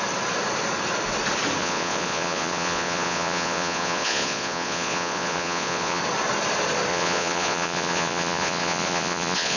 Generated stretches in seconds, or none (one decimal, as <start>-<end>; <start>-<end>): 1.6-6.0; 6.9-9.6